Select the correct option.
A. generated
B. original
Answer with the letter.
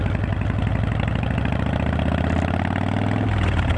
B